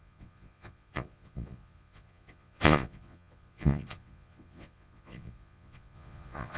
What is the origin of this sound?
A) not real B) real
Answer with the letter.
A